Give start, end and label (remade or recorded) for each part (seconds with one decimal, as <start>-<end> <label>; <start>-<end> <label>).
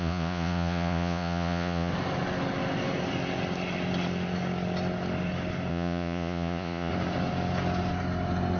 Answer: 0.0-1.9 remade; 1.9-5.7 recorded; 5.7-6.9 remade; 6.9-8.6 recorded